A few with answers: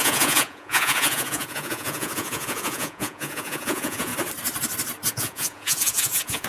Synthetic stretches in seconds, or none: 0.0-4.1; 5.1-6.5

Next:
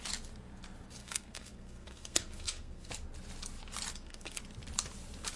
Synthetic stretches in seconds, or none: 1.0-2.9; 3.9-4.4

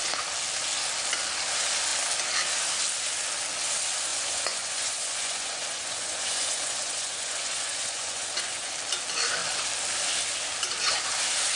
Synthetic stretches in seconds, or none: 4.1-8.7

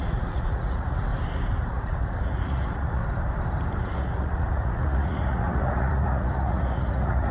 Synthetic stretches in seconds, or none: 0.0-1.1; 1.7-3.0; 3.8-7.3

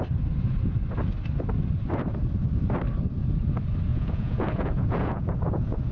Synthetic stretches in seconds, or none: 3.9-5.9

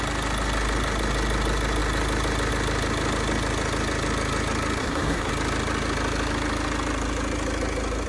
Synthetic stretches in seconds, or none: 4.8-5.3

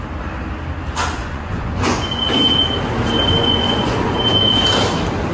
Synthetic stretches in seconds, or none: 1.2-2.2; 3.4-4.2